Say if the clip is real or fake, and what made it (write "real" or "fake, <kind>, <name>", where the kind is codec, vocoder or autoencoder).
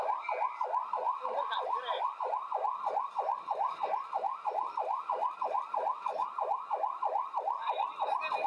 real